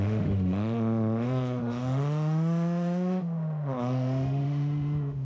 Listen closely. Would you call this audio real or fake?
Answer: fake